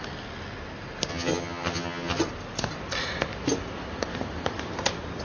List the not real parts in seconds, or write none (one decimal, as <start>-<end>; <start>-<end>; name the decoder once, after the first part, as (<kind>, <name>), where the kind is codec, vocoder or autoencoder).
1.1-2.2 (vocoder, HiFi-GAN)

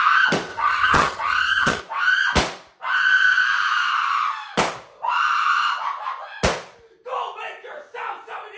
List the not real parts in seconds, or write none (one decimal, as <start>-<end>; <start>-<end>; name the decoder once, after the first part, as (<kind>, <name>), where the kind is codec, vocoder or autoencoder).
0.5-1.8 (vocoder, HiFi-GAN)